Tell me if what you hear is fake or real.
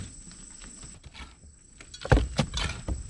real